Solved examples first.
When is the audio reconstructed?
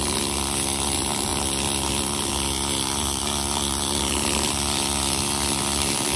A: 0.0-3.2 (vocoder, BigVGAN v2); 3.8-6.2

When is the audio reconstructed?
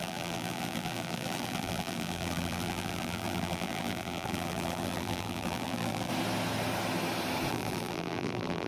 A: 0.0-6.1 (vocoder, BigVGAN v2); 7.5-8.7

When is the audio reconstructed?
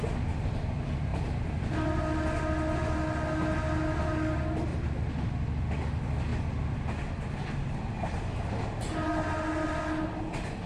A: 1.1-2.0 (vocoder, BigVGAN v2); 4.7-5.6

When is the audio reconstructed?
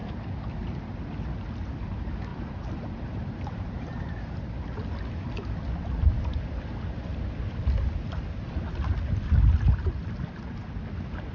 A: 0.0-0.8 (vocoder, BigVGAN v2); 2.3-4.2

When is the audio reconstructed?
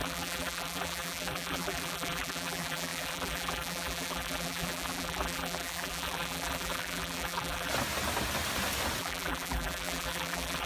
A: 0.0-7.7 (vocoder, BigVGAN v2); 9.0-10.7